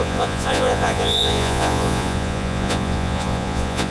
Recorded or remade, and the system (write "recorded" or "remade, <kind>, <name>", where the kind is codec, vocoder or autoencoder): remade, vocoder, Vocos